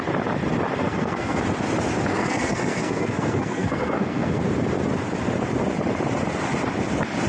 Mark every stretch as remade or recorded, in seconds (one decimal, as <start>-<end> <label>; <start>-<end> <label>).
0.0-0.8 recorded; 0.8-1.4 remade; 1.4-2.1 recorded; 2.1-4.4 remade; 4.4-7.3 recorded